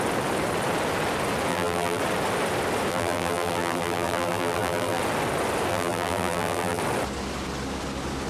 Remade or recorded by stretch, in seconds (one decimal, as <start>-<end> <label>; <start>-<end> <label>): 0.0-1.5 recorded; 1.5-2.0 remade; 2.0-2.9 recorded; 2.9-5.0 remade; 5.0-5.7 recorded; 5.7-6.8 remade; 6.8-8.3 recorded